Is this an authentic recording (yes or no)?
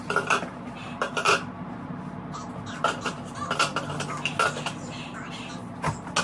yes